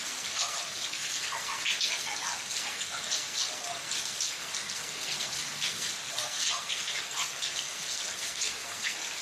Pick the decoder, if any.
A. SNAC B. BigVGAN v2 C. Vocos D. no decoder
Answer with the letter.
A